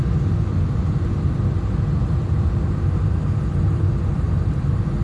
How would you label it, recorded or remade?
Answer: recorded